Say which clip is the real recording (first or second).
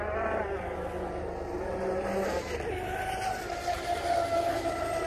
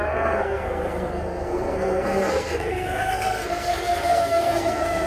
first